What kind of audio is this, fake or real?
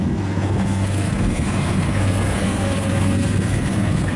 fake